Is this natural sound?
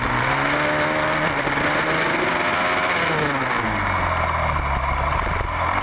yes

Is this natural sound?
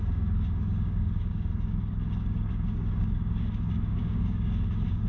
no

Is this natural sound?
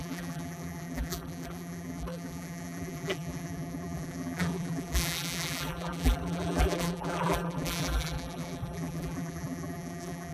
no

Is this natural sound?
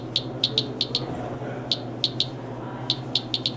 yes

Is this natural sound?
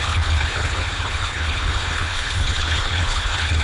no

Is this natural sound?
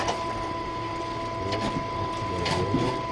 yes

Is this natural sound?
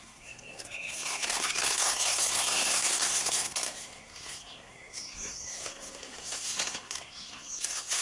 no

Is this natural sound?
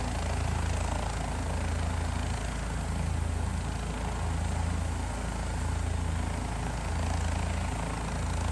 yes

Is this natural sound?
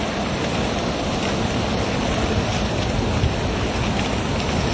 yes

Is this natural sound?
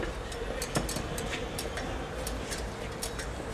no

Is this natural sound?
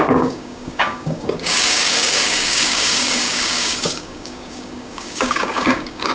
no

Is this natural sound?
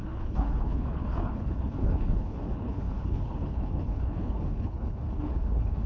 no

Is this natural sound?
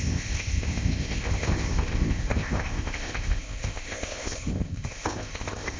no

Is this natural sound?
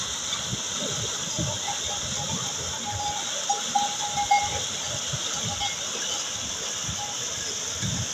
yes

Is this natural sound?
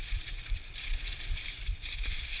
no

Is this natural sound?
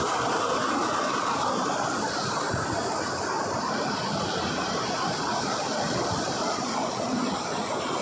yes